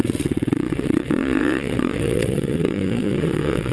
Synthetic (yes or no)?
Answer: yes